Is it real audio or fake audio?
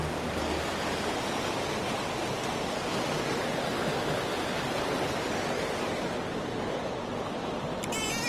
real